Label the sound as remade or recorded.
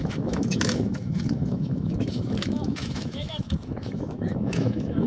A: remade